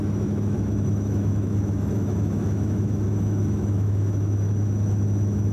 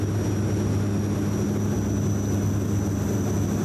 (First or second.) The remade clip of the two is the first